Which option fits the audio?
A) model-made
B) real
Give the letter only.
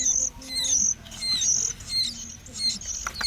B